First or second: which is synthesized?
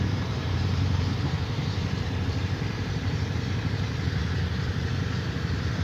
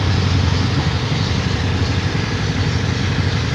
first